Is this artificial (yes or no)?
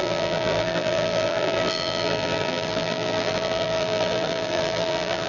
yes